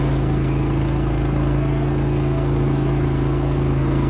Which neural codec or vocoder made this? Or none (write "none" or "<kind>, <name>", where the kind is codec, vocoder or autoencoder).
codec, SNAC